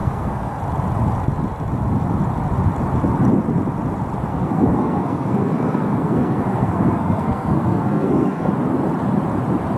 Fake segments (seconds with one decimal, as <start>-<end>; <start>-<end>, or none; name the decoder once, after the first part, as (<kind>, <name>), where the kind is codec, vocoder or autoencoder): 0.0-0.6 (codec, SNAC); 4.3-8.5